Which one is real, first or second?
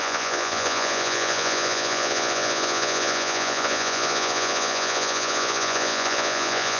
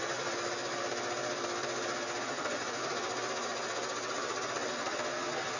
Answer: second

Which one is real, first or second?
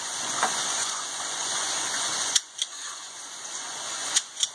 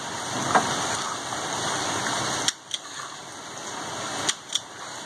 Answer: second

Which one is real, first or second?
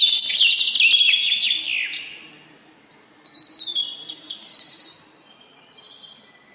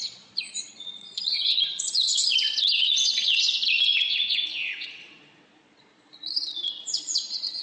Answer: first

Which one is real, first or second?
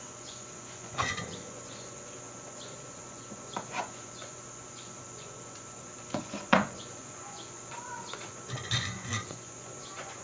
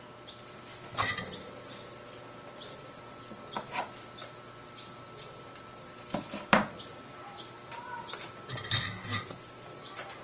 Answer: second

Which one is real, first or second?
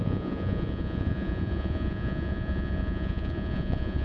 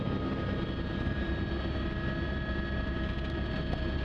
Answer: second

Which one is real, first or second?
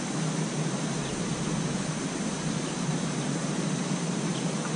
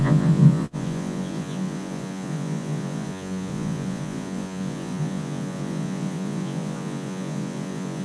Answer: first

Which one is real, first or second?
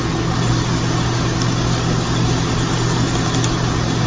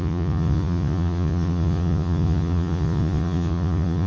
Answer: first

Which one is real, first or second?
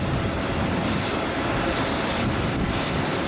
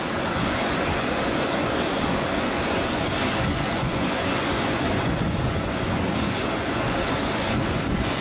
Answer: first